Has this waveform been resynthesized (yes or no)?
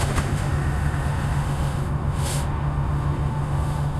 yes